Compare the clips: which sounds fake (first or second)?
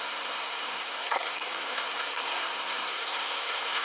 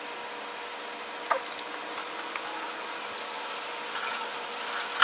first